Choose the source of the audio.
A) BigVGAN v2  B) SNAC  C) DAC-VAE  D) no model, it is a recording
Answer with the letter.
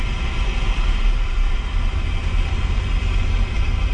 A